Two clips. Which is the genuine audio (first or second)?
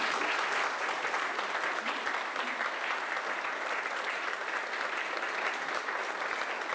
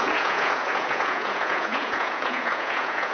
first